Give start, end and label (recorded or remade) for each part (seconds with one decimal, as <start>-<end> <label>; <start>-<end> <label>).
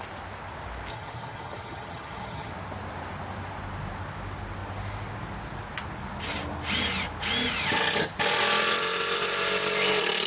0.0-0.9 recorded; 0.9-2.5 remade; 2.5-10.3 recorded